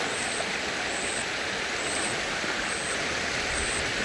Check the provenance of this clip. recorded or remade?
recorded